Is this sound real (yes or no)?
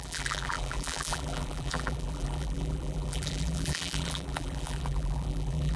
no